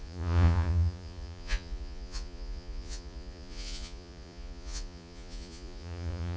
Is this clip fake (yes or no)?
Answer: yes